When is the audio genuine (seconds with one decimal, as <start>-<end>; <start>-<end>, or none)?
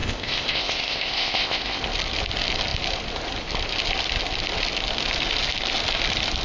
1.8-6.4